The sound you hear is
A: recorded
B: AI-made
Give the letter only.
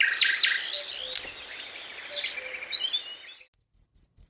A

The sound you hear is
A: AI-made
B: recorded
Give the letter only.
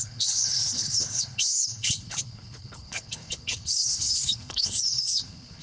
A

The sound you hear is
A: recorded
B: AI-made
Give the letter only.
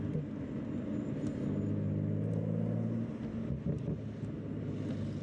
A